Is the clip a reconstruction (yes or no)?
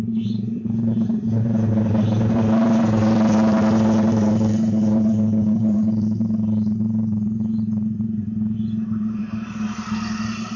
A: yes